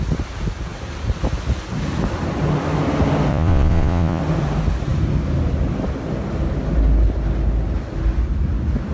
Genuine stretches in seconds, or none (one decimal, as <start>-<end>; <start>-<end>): 0.0-3.3; 4.2-8.9